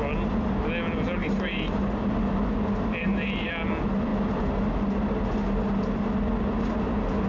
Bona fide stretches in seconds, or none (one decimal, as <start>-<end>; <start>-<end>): 0.0-1.2; 2.1-3.0; 3.5-7.3